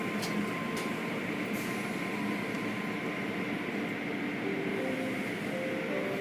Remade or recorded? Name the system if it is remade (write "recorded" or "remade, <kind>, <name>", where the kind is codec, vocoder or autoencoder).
recorded